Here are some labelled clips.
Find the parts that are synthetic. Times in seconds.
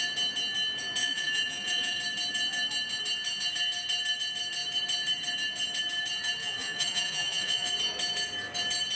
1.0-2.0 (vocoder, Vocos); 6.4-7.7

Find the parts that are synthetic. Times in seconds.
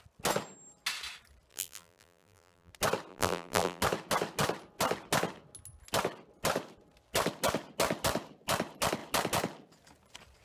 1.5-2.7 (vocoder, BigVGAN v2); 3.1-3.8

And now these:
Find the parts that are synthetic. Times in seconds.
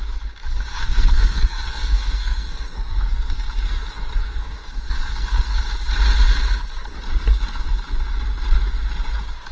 0.7-5.6 (codec, SNAC)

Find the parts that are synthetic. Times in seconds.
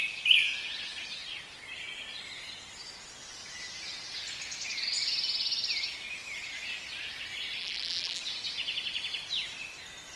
7.6-8.2 (vocoder, BigVGAN v2)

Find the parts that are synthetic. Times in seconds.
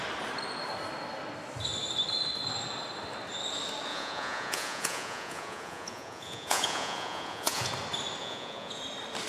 3.9-7.7 (vocoder, Vocos); 8.2-8.8